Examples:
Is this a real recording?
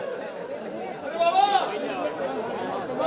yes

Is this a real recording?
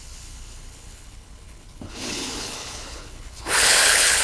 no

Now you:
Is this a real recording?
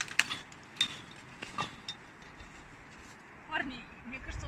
yes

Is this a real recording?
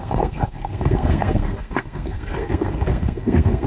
no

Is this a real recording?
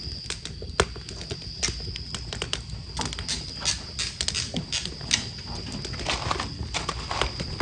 yes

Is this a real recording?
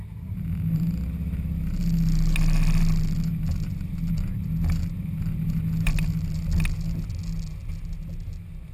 yes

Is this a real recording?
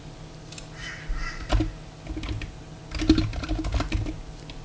yes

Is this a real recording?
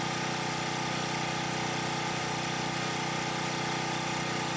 yes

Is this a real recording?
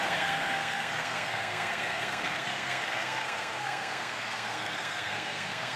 no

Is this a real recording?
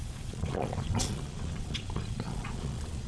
no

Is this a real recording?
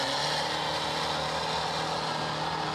yes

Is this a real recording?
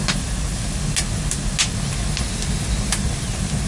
yes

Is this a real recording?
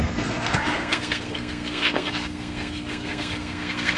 no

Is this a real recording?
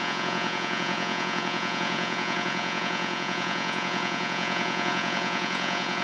no